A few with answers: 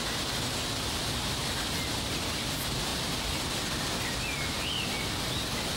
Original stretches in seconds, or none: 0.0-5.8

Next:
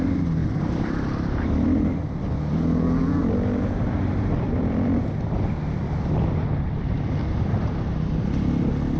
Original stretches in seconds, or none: 0.0-0.4; 1.8-9.0

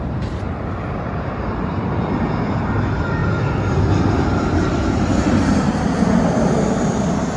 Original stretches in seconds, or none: 3.2-4.1

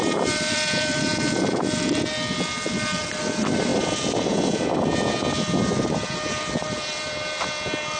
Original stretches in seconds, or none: 1.1-3.0

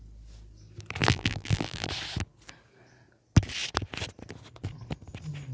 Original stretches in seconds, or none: 0.0-1.0; 1.9-5.5

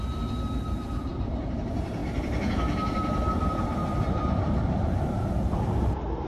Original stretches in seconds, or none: none

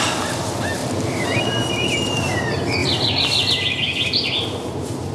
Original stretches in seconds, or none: 0.0-0.8; 1.4-5.1

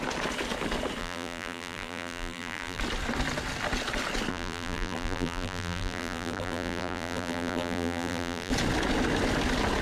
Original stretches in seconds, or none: 0.0-1.0; 2.8-4.3; 8.5-9.8